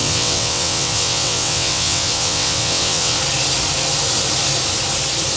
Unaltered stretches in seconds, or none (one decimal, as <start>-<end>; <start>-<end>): 3.2-5.4